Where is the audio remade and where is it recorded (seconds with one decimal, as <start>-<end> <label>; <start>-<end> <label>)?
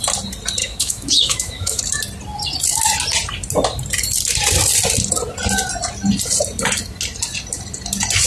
0.0-0.6 recorded; 0.6-1.8 remade; 1.8-8.3 recorded